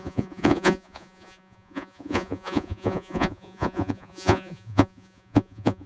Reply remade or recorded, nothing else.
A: remade